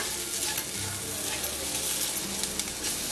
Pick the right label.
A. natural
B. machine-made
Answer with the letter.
A